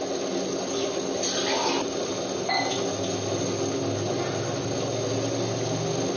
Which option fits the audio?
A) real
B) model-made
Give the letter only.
A